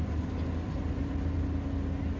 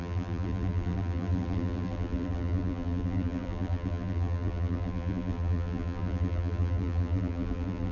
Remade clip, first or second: second